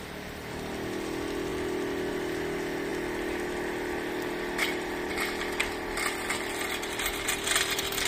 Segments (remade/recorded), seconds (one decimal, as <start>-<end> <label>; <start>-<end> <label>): 0.0-8.1 recorded